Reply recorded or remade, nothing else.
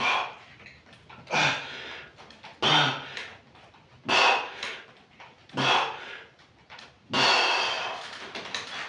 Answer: recorded